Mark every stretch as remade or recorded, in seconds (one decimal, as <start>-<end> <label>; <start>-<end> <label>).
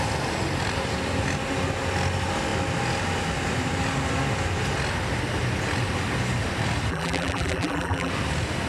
0.0-6.9 recorded; 6.9-8.1 remade; 8.1-8.7 recorded